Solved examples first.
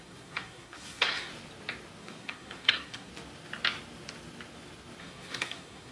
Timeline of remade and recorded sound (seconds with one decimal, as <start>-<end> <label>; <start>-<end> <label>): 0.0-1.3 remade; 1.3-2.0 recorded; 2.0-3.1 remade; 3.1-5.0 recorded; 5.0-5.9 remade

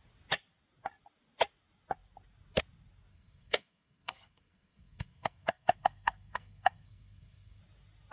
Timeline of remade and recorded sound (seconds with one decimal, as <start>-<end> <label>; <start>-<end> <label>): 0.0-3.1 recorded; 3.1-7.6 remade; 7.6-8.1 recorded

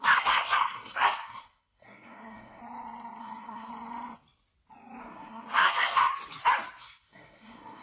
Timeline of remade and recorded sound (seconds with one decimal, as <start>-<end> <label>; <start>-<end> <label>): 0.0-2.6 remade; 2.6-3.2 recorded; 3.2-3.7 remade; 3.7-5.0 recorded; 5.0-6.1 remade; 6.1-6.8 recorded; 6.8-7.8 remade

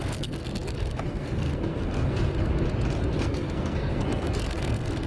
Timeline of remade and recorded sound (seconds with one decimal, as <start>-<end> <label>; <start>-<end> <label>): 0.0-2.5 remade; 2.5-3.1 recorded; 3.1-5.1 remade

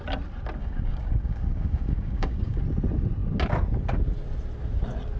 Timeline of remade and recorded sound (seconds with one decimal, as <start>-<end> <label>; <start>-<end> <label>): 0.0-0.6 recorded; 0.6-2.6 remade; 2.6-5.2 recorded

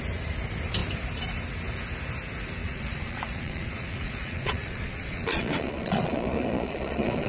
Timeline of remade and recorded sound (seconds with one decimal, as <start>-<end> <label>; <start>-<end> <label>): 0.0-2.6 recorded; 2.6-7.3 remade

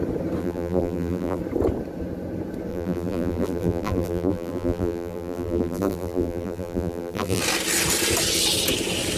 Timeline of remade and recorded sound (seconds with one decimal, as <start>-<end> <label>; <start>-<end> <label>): 0.0-0.4 recorded; 0.4-1.4 remade; 1.4-2.7 recorded; 2.7-7.4 remade; 7.4-9.2 recorded

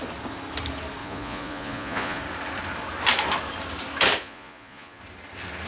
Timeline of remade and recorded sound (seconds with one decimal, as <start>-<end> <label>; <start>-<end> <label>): 0.0-1.0 recorded; 1.0-2.2 remade; 2.2-4.2 recorded; 4.2-5.0 remade; 5.0-5.7 recorded